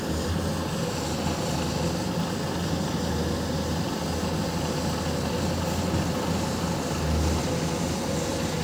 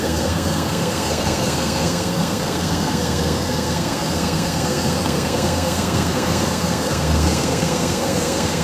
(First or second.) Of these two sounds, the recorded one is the first